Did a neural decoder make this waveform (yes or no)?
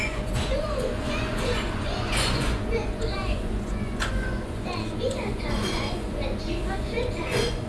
yes